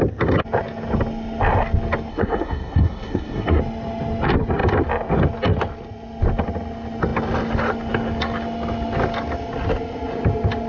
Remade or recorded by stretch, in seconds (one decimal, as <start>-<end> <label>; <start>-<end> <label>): 0.0-2.1 recorded; 2.1-3.6 remade; 3.6-10.7 recorded